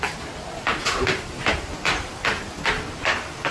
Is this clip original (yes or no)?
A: yes